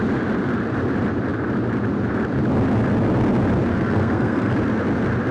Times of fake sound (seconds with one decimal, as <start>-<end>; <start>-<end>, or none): 3.7-4.5